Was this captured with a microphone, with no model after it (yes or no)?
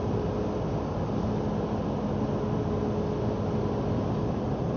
yes